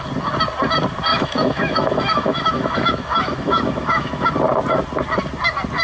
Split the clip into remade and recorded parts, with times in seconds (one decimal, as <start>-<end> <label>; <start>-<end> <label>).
0.0-1.1 recorded; 1.1-4.3 remade; 4.3-5.8 recorded

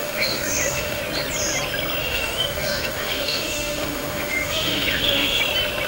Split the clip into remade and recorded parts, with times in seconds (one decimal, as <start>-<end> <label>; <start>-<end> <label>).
0.0-1.0 remade; 1.0-2.0 recorded; 2.0-5.4 remade; 5.4-5.9 recorded

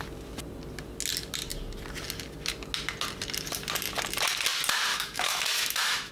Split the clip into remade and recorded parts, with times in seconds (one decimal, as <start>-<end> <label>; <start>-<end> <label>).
0.0-4.9 recorded; 4.9-6.1 remade

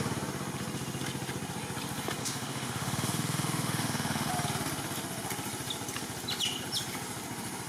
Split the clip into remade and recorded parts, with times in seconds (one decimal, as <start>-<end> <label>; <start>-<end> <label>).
0.0-2.2 recorded; 2.2-4.3 remade; 4.3-7.7 recorded

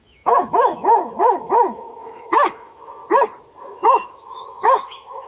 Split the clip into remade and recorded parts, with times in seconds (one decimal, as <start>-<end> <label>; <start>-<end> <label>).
0.0-3.0 remade; 3.0-3.6 recorded; 3.6-5.3 remade

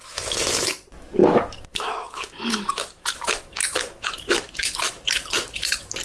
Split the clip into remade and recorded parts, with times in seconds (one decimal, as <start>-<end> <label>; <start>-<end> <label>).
0.0-6.0 remade

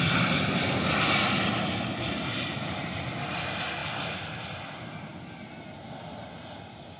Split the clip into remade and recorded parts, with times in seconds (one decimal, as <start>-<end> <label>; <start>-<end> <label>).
0.0-7.0 recorded